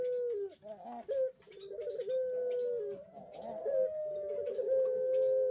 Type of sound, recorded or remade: recorded